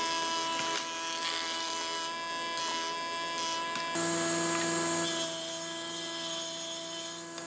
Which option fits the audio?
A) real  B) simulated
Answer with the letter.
A